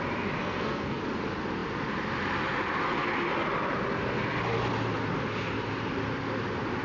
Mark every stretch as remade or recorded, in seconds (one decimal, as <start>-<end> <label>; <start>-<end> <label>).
0.0-0.4 recorded; 0.4-1.0 remade; 1.0-6.8 recorded